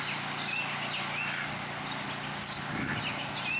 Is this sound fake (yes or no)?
no